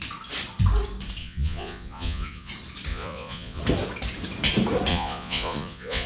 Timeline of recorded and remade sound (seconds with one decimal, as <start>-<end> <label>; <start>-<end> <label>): 0.0-1.2 recorded; 1.2-2.5 remade; 2.5-2.9 recorded; 2.9-3.6 remade; 3.6-4.9 recorded; 4.9-6.1 remade